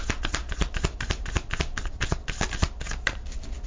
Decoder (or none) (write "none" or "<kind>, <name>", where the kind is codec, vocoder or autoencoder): none